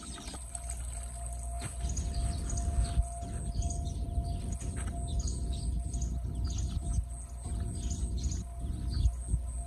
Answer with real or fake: real